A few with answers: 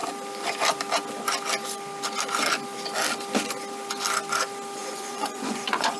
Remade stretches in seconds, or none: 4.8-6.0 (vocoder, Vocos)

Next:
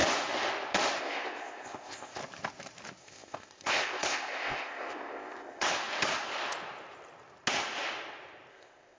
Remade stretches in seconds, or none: 1.0-2.2 (codec, ZipCodec); 3.0-5.7; 8.5-9.0

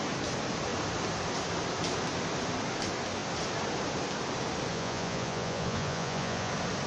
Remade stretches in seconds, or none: 4.7-6.5 (vocoder, Vocos)

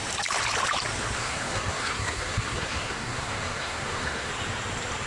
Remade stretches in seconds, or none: 1.2-4.3 (codec, SNAC)

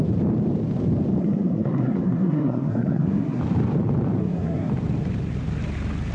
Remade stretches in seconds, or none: 1.2-3.4 (codec, SNAC); 4.2-4.7

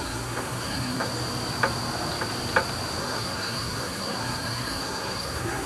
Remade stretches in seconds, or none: 0.0-1.1 (codec, SNAC); 3.0-5.7